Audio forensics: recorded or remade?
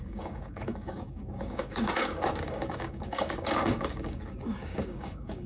remade